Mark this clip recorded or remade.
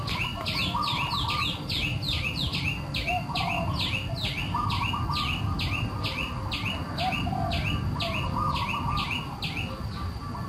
recorded